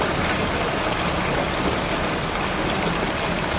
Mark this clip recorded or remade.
recorded